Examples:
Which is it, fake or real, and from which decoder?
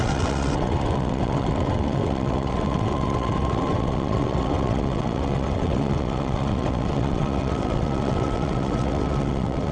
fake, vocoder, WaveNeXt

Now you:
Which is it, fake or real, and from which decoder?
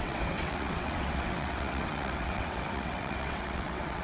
fake, vocoder, WaveNeXt